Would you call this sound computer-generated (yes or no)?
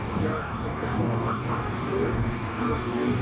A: yes